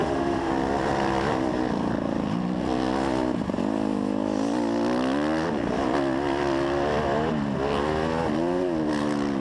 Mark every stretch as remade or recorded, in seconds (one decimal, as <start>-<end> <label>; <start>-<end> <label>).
0.0-0.5 remade; 0.5-9.4 recorded